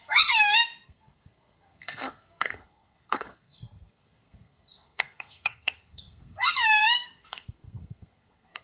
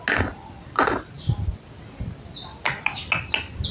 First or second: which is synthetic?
first